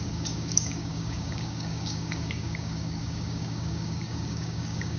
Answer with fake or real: fake